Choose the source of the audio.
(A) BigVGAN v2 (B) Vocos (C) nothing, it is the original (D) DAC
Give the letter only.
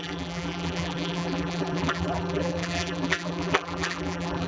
A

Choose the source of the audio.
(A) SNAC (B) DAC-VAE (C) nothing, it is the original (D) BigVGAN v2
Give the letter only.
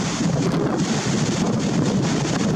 C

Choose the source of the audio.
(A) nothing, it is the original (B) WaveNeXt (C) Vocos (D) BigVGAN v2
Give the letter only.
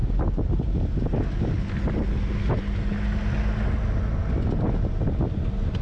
A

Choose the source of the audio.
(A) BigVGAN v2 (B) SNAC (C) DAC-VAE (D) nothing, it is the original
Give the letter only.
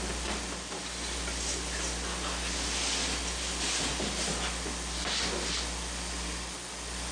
D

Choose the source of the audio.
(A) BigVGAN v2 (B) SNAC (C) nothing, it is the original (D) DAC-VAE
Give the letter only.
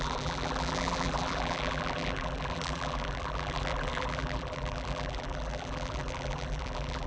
A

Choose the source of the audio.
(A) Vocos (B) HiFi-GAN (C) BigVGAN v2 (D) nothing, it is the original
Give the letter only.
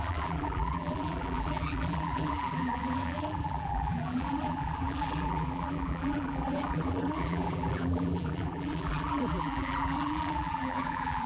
C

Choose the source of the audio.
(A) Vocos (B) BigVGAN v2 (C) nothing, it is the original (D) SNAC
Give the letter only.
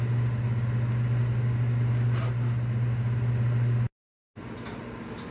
C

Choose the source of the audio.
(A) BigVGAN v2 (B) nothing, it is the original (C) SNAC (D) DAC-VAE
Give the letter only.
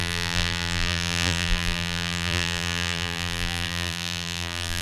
A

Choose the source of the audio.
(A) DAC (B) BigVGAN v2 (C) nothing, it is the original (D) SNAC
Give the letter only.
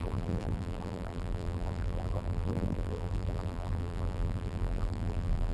B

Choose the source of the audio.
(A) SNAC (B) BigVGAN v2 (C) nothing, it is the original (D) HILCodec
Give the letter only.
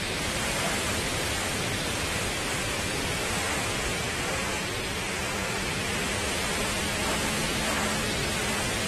B